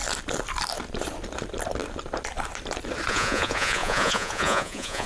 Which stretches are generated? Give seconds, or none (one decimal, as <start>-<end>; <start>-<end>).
3.1-5.1